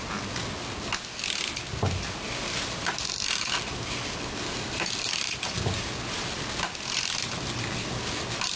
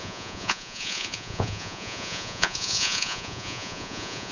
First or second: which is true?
first